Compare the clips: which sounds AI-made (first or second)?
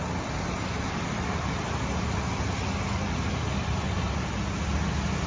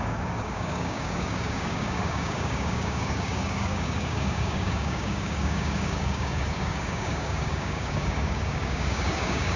second